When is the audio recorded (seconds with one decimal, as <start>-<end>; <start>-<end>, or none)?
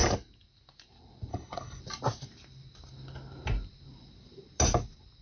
0.0-1.3; 1.8-5.2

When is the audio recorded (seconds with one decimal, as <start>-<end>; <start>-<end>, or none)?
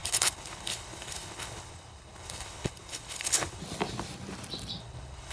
3.6-4.8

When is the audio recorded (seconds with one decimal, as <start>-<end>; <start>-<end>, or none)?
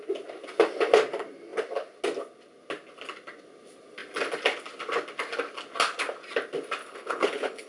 0.0-6.8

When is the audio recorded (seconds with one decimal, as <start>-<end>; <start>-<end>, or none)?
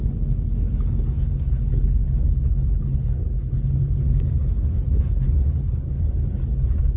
none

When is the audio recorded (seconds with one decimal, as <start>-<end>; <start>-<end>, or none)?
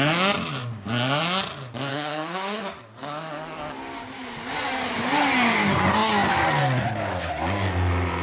0.0-1.9; 2.6-8.2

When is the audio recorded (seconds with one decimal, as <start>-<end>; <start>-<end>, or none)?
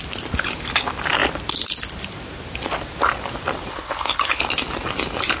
0.0-3.7; 4.4-5.4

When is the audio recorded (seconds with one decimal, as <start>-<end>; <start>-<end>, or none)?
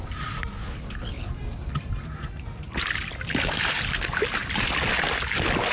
0.0-0.6; 1.3-5.7